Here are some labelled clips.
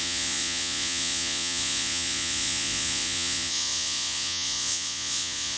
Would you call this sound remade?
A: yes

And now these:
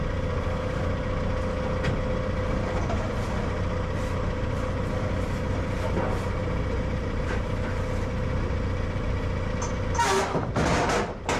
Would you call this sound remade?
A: no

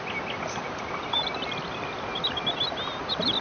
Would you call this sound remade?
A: no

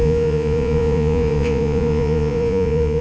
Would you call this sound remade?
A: yes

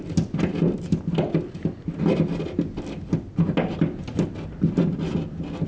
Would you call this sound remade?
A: no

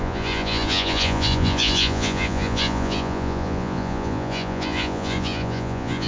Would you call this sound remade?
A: yes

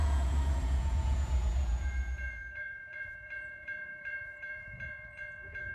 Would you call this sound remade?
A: yes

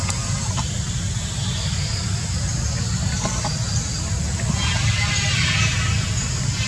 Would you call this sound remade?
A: no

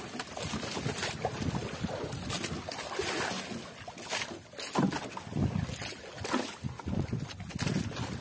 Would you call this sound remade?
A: no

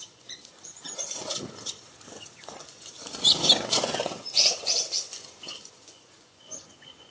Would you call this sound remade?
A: yes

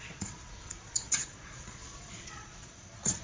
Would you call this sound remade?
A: yes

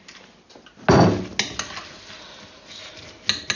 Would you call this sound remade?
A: no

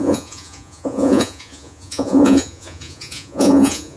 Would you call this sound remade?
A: yes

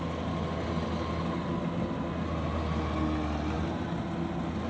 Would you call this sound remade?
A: no